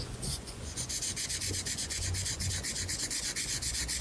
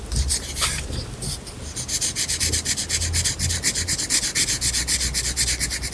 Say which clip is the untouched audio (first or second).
second